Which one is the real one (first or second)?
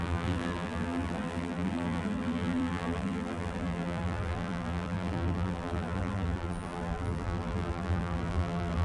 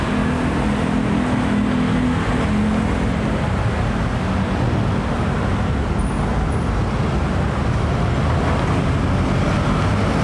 second